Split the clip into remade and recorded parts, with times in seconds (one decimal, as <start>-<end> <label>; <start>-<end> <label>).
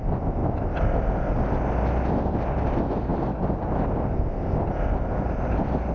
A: 0.0-5.9 recorded